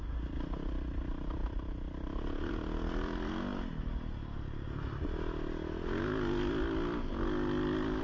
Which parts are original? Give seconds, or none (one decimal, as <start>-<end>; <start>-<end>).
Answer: 0.0-8.0